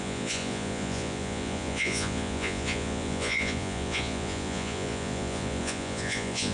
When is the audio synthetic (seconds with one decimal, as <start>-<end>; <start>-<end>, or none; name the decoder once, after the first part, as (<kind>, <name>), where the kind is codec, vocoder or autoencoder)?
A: 0.0-6.5 (vocoder, Vocos)